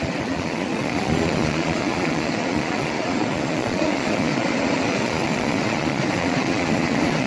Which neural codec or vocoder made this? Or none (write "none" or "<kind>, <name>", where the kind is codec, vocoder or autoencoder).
vocoder, Vocos